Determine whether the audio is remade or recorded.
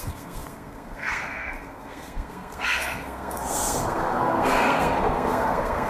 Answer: remade